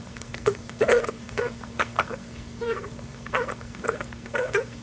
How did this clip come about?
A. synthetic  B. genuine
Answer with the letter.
A